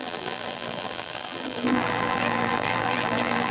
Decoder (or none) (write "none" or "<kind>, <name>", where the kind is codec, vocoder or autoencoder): vocoder, BigVGAN v2